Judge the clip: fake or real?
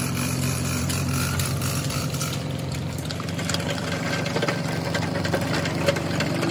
fake